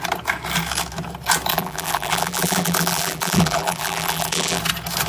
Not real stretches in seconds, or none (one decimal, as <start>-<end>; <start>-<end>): 1.5-4.6